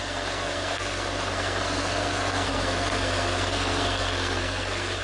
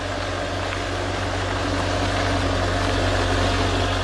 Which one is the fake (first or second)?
first